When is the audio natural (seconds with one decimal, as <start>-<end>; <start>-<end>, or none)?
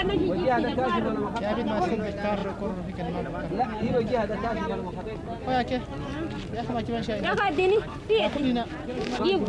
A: 0.0-9.5